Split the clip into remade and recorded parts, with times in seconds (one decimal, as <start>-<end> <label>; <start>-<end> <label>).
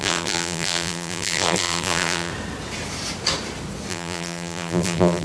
0.0-2.3 remade; 2.3-3.9 recorded; 3.9-5.2 remade